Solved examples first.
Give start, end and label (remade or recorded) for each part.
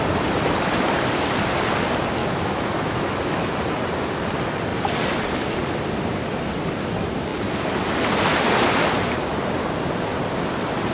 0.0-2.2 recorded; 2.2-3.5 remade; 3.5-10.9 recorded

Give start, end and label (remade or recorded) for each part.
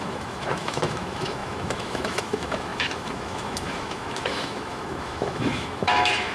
0.0-6.3 remade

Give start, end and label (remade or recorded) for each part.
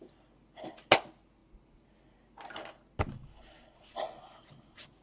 0.0-5.0 recorded